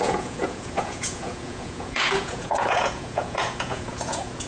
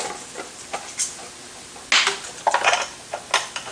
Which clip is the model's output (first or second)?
first